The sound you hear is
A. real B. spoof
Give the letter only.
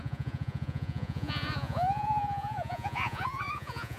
B